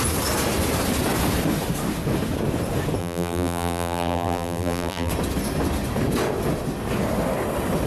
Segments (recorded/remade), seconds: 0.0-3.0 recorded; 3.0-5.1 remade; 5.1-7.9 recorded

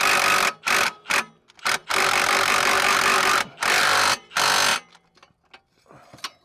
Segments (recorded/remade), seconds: 0.0-6.4 recorded